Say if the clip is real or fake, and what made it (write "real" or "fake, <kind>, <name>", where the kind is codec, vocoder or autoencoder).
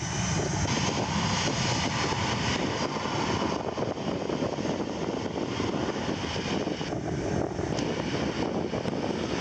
real